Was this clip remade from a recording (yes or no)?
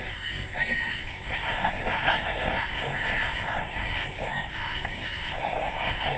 yes